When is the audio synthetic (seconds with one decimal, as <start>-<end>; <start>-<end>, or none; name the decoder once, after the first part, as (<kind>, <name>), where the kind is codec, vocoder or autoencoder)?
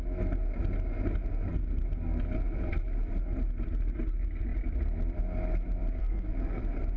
6.0-6.6 (codec, SNAC)